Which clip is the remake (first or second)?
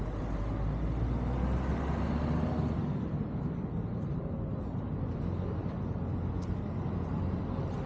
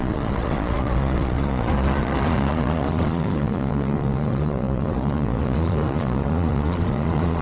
second